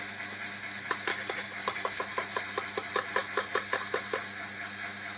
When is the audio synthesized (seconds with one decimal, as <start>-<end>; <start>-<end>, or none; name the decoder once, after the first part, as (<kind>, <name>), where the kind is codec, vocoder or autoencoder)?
1.1-2.0 (codec, DAC)

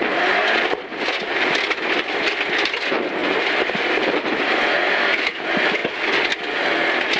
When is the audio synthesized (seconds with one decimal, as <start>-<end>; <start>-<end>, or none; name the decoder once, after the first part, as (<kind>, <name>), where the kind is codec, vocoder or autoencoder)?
none

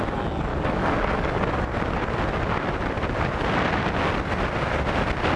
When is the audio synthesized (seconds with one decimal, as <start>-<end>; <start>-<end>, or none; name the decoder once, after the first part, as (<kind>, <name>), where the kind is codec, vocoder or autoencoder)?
0.5-1.4 (codec, DAC)

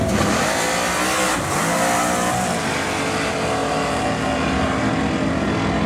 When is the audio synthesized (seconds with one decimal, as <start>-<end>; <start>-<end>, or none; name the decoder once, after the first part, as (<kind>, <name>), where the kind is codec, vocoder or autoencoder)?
none

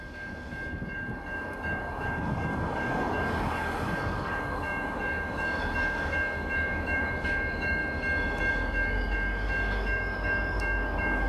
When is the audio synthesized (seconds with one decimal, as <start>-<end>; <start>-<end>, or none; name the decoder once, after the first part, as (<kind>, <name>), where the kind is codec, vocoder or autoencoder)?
0.0-7.8 (codec, DAC); 8.5-11.3

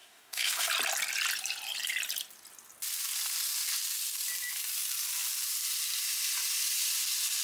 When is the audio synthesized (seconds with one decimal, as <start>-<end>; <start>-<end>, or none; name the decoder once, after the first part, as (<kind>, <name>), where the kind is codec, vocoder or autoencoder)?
0.0-0.7 (codec, DAC)